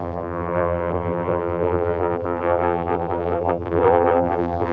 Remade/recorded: remade